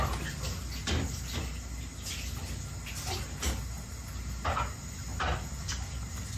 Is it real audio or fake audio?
real